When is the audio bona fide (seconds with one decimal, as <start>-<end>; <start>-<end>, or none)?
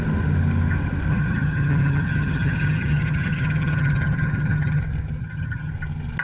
0.0-1.1; 4.8-5.2; 5.7-6.2